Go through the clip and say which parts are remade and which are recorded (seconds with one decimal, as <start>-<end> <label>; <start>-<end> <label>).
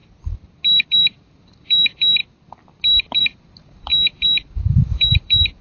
0.0-0.9 recorded; 0.9-2.2 remade; 2.2-3.2 recorded; 3.2-5.6 remade